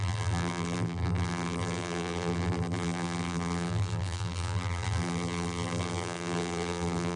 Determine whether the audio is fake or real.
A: fake